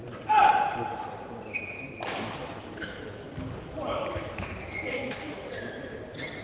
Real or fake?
fake